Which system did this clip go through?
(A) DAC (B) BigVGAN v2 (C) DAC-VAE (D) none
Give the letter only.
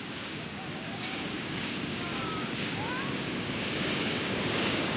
A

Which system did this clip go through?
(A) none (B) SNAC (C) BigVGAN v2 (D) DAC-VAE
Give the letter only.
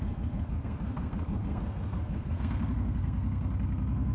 B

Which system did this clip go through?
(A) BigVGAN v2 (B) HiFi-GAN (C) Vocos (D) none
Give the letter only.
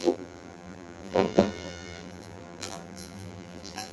A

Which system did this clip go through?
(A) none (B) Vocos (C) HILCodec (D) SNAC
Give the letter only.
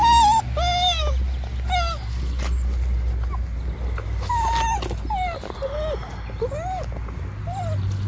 A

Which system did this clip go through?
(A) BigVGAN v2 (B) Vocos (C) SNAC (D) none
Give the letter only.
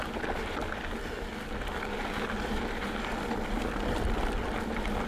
D